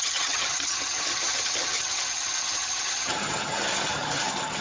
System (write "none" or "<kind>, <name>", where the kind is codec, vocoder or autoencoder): vocoder, HiFi-GAN